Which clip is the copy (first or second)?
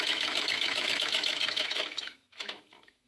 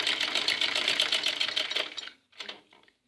first